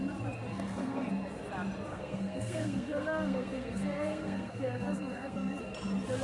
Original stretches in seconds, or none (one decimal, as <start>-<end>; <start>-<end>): 0.0-0.5; 1.1-1.9; 5.6-6.2